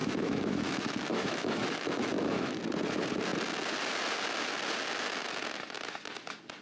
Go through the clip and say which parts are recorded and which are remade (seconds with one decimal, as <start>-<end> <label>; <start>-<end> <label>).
0.0-2.6 remade; 2.6-6.6 recorded